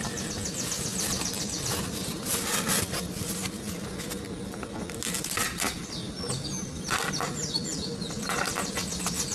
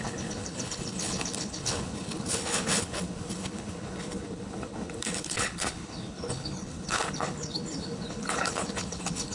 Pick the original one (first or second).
first